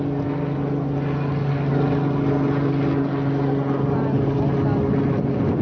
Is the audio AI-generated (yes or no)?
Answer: no